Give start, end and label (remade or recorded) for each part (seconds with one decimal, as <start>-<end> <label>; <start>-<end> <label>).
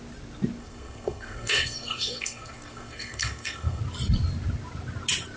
0.0-0.6 recorded; 0.6-3.8 remade; 3.8-5.4 recorded